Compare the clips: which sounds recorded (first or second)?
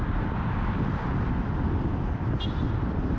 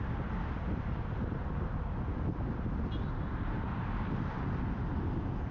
second